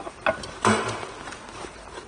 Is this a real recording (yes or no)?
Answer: no